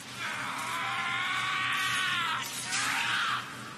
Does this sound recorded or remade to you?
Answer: recorded